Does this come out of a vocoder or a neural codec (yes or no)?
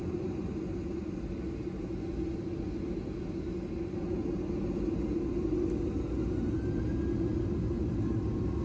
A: no